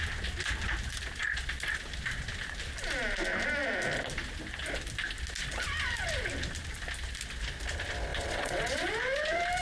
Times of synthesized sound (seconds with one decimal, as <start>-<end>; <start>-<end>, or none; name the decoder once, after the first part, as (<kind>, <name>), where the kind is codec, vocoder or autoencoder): 8.1-8.9 (vocoder, WaveNeXt)